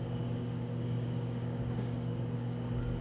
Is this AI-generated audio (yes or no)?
yes